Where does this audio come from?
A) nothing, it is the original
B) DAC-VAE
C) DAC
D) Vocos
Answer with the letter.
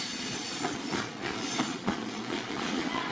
D